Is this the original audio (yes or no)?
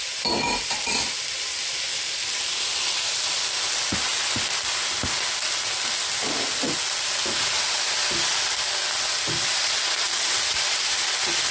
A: yes